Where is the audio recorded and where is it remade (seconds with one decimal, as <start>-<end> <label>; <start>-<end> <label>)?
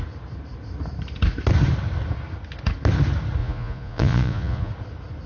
0.0-3.4 recorded; 3.4-4.7 remade; 4.7-5.3 recorded